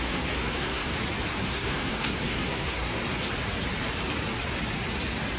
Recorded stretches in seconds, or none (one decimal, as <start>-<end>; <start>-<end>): 0.9-1.4; 3.0-5.4